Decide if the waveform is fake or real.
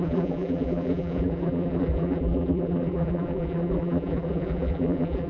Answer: fake